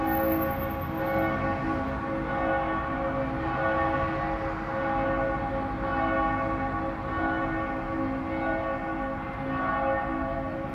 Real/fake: real